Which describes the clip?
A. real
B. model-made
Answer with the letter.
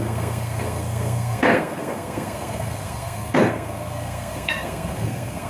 B